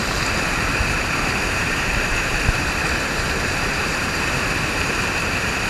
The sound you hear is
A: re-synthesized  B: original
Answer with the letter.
A